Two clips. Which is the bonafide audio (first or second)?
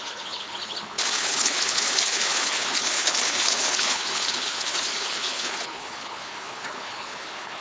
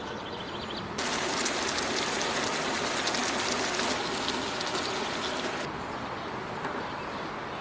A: second